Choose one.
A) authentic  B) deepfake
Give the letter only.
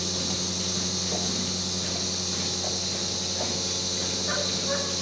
A